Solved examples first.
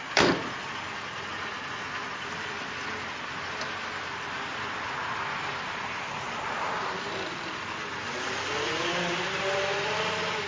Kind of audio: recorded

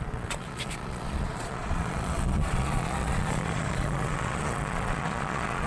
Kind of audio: remade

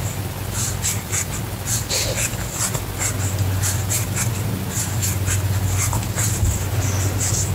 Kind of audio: recorded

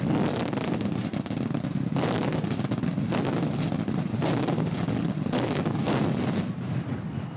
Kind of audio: recorded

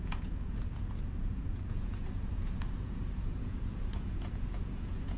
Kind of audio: remade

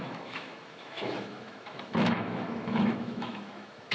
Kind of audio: remade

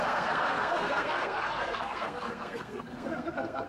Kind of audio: remade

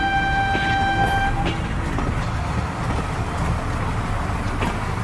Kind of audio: recorded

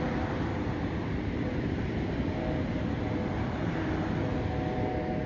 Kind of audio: recorded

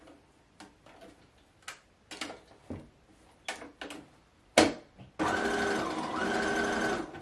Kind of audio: recorded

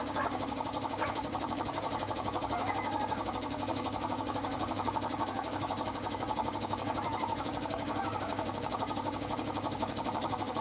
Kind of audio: remade